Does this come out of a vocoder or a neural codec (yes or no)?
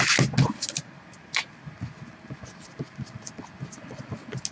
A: no